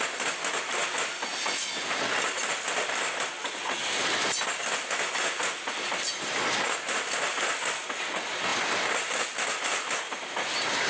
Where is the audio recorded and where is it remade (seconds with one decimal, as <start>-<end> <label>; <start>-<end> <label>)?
0.0-10.9 recorded